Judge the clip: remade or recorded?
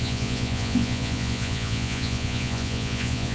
remade